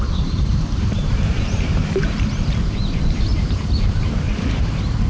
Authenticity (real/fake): fake